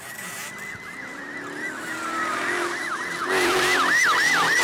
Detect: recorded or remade remade